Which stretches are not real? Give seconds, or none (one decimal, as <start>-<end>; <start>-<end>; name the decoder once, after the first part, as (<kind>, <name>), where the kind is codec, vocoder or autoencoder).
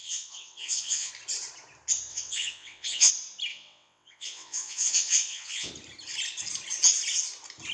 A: 0.0-1.1 (vocoder, WaveNeXt); 2.1-3.1; 3.5-5.7